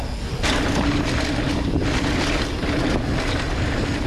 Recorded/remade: recorded